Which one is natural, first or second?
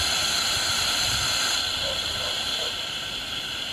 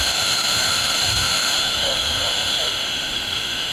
first